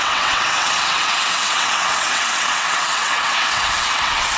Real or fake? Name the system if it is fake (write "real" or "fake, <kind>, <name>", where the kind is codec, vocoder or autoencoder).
fake, vocoder, WaveNeXt